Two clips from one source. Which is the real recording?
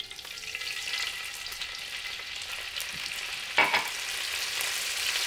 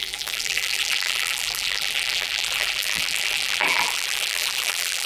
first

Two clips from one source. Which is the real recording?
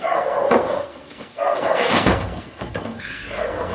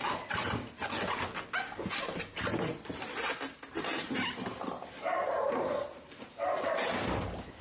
second